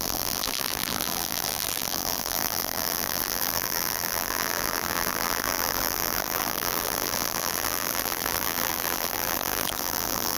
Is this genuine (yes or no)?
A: no